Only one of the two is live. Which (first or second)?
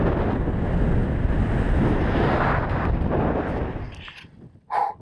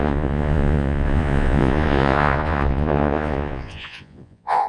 first